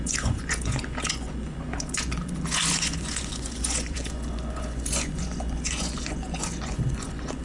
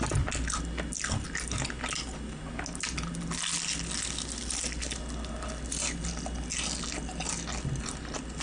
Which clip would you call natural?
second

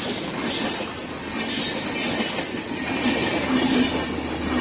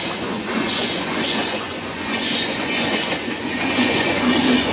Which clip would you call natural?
first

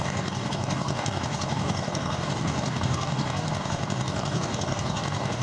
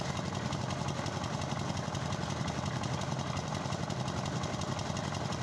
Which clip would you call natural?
second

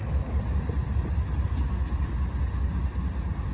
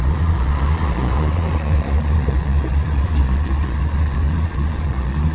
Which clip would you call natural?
first